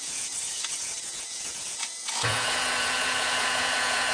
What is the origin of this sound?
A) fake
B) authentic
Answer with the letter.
A